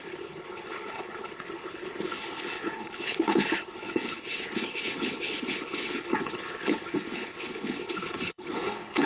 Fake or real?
fake